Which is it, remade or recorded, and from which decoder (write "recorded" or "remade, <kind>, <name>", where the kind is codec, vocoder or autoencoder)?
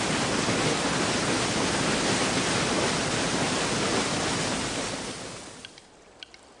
recorded